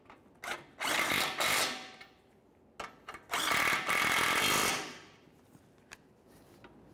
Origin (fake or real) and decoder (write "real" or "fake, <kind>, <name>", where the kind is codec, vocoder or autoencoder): real